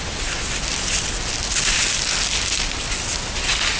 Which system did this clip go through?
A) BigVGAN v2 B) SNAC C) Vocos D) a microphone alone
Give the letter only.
D